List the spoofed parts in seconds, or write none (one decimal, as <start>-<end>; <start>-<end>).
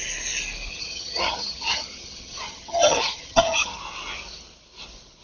0.7-3.8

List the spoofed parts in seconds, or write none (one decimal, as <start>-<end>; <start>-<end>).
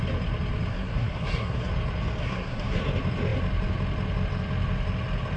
0.7-1.7; 2.2-2.8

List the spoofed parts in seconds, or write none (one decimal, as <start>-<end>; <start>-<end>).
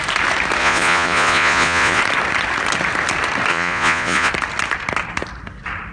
0.6-2.0; 3.5-4.3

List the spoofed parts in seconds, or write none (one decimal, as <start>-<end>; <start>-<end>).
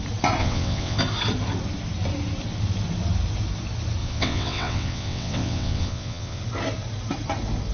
0.4-1.0; 4.0-6.4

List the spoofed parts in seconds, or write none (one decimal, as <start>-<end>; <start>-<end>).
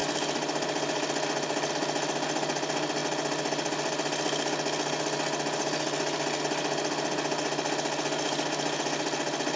none